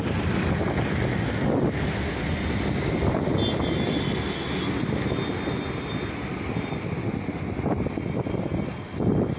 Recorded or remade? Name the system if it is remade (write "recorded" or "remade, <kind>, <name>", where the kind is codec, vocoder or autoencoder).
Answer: recorded